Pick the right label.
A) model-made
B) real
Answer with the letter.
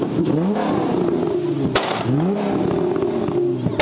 B